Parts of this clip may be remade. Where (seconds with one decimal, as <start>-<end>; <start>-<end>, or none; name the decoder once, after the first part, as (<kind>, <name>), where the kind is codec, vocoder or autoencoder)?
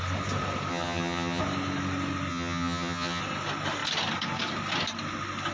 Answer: 0.7-1.4 (vocoder, HiFi-GAN); 2.3-3.2